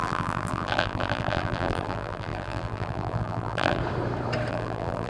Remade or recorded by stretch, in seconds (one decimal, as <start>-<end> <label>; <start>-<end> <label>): 0.0-3.8 remade; 3.8-4.5 recorded; 4.5-5.1 remade